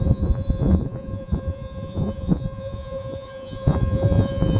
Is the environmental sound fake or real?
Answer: fake